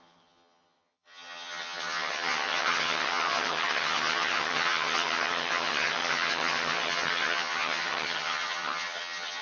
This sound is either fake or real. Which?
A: fake